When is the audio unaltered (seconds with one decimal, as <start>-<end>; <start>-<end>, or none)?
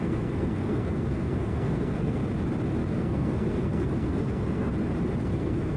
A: 2.2-2.9; 4.7-5.2